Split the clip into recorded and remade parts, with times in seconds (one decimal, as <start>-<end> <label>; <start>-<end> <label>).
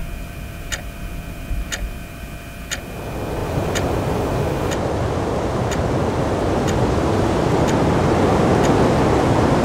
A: 0.0-2.2 remade; 2.2-3.4 recorded; 3.4-6.5 remade; 6.5-9.6 recorded